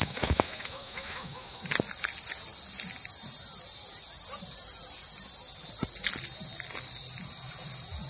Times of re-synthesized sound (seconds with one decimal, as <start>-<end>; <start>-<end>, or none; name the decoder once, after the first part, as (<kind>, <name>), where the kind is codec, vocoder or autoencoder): 0.0-1.6 (autoencoder, DAC-VAE)